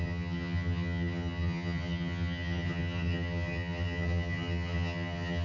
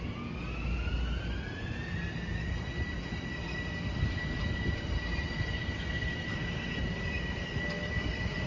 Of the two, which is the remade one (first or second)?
first